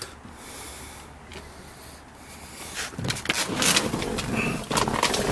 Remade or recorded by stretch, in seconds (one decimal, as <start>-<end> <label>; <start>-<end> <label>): 0.0-5.3 recorded